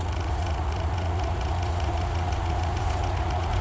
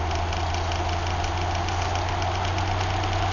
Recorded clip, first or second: second